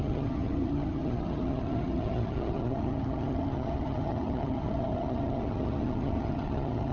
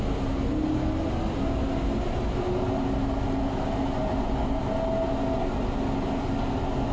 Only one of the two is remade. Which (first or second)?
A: first